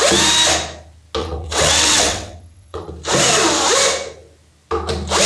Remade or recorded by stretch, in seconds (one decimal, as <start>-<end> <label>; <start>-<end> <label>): 0.0-1.2 recorded; 1.2-2.9 remade; 2.9-5.3 recorded